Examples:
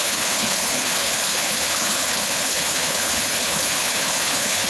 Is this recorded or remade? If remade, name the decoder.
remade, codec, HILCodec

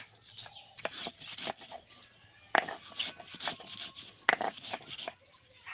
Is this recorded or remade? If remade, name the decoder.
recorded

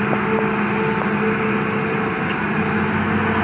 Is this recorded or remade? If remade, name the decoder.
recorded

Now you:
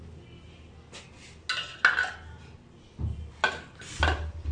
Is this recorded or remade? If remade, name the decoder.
recorded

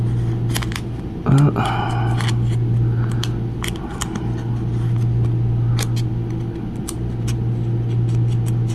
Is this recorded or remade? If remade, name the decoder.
recorded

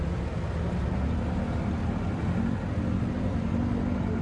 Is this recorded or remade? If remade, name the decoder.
recorded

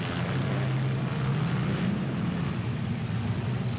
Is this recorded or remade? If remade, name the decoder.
recorded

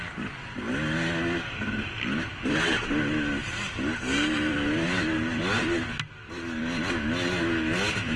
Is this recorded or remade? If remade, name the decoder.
recorded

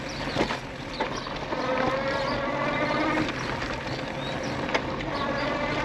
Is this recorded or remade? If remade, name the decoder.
recorded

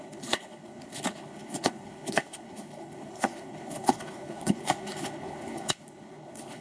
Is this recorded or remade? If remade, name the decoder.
remade, codec, HILCodec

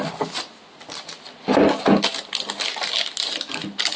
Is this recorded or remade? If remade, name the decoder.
recorded